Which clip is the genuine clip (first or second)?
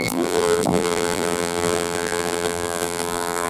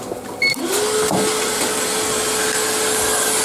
second